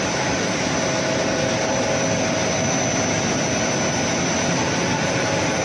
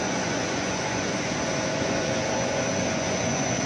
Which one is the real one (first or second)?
first